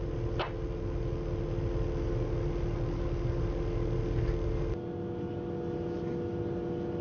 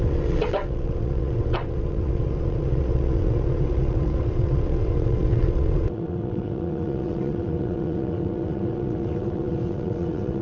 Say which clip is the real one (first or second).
first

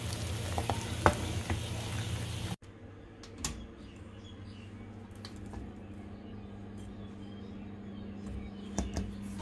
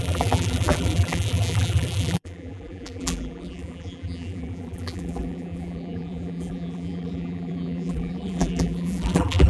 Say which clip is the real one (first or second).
first